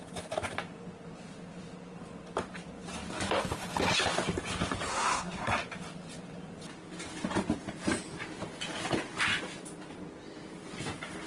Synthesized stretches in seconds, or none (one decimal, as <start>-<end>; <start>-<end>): 4.9-5.6

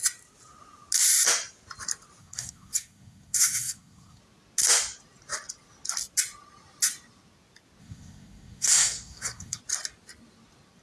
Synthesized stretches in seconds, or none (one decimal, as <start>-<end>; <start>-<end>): 2.2-4.2; 7.8-9.6

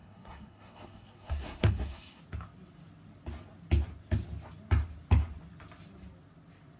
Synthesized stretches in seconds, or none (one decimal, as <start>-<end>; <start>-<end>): 0.0-2.2

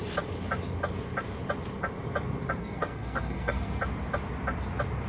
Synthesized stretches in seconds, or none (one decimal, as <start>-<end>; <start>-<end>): 2.6-3.8